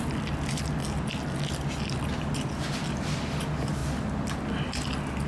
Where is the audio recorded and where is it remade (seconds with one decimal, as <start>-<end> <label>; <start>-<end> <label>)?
0.0-5.3 recorded